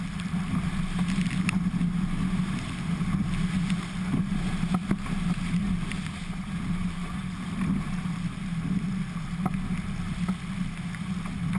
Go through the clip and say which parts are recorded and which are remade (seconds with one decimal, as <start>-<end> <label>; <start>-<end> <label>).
0.0-11.6 recorded